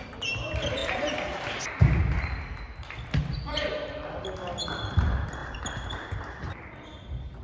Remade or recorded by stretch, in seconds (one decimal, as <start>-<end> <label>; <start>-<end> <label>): 0.0-0.8 recorded; 0.8-1.6 remade; 1.6-5.4 recorded; 5.4-6.5 remade; 6.5-7.4 recorded